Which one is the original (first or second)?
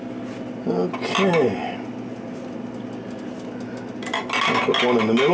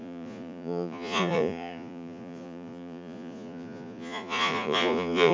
first